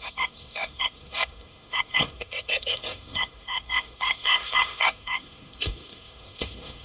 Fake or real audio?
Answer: fake